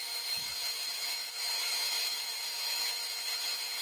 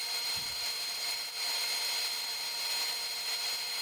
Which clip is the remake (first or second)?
first